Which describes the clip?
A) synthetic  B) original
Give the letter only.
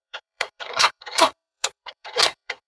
A